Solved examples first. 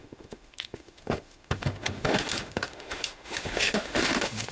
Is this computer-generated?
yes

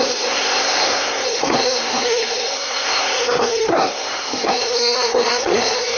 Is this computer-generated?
yes